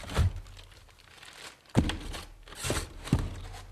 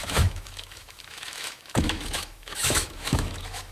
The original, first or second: first